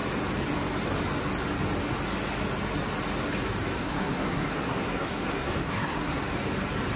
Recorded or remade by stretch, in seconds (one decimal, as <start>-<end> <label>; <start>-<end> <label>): 0.0-3.8 recorded; 3.8-6.2 remade; 6.2-7.0 recorded